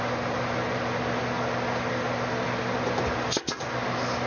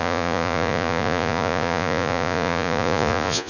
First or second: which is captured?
first